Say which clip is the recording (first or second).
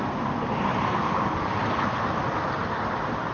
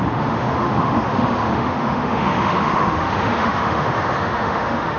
first